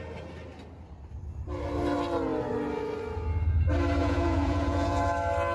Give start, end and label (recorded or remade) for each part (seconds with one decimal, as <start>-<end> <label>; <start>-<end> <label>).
0.0-4.0 recorded; 4.0-5.0 remade; 5.0-5.5 recorded